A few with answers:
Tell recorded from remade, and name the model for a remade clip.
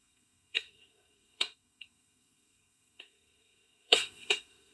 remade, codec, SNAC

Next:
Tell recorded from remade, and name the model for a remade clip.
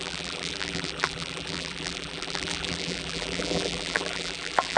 remade, vocoder, BigVGAN v2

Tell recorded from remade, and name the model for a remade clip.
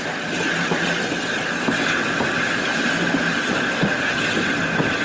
recorded